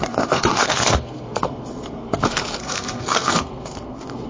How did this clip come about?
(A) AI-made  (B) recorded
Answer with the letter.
A